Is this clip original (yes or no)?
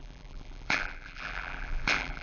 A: no